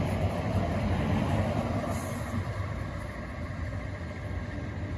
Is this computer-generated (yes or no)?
yes